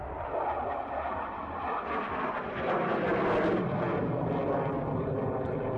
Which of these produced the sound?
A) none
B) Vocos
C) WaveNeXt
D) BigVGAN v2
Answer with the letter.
A